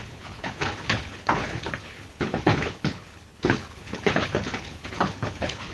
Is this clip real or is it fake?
fake